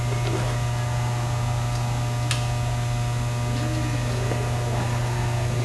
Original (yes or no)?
yes